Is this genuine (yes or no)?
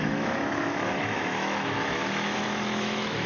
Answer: no